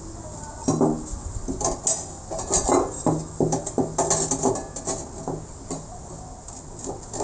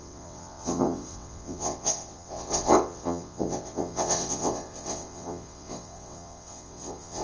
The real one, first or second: first